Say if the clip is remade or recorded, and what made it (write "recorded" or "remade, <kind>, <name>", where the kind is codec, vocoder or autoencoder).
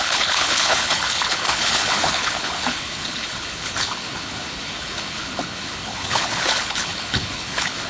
remade, codec, HILCodec